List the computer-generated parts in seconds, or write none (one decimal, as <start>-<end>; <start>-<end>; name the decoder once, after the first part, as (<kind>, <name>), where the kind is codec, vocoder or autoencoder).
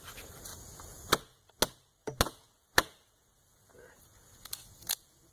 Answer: 0.5-1.5 (vocoder, Vocos); 2.0-5.3